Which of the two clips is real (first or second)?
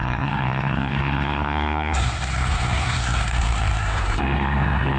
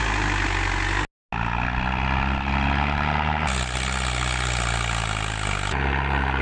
second